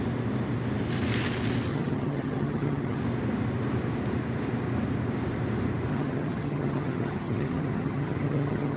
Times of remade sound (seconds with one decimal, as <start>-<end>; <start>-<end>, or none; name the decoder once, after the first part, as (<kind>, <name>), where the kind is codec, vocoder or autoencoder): 1.7-3.0 (vocoder, HiFi-GAN); 5.9-8.8